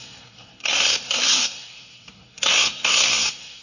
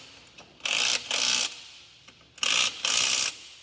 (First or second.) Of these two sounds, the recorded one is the second